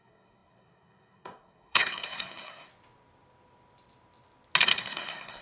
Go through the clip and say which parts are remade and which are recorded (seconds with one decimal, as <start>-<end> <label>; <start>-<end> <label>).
0.0-2.7 remade; 2.7-4.6 recorded; 4.6-5.4 remade